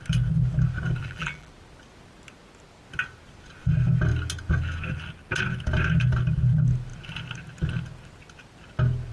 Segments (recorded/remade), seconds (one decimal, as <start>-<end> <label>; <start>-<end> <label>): 0.0-1.0 recorded; 1.0-1.5 remade; 1.5-9.1 recorded